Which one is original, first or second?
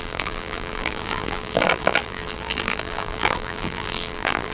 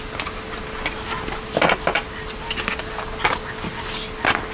second